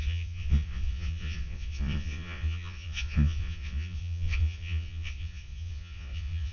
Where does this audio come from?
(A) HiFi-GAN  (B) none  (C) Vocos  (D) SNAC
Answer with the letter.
C